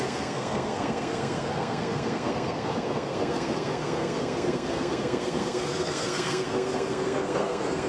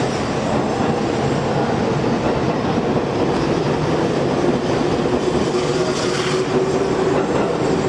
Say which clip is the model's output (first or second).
first